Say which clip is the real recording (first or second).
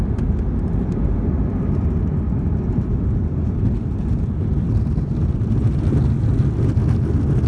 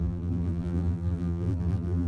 first